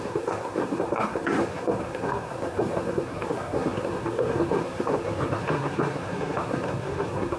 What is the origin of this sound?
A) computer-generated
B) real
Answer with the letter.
A